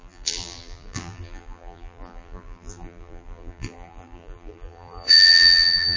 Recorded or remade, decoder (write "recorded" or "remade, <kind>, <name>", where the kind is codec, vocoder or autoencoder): remade, vocoder, BigVGAN v2